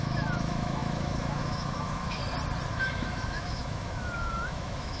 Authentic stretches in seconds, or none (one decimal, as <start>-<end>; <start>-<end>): 2.2-2.7